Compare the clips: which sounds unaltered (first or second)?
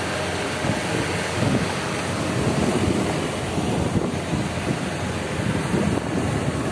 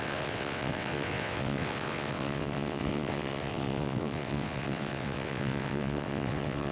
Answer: first